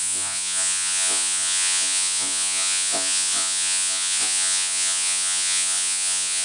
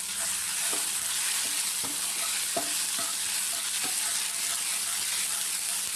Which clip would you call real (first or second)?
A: second